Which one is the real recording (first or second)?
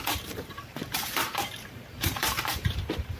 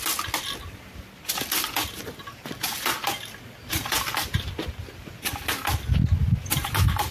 second